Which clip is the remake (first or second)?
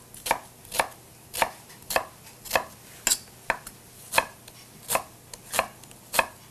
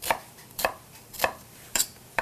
second